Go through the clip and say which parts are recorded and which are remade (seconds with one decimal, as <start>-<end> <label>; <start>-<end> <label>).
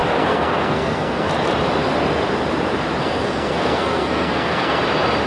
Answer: 0.0-1.3 remade; 1.3-3.0 recorded; 3.0-4.8 remade; 4.8-5.3 recorded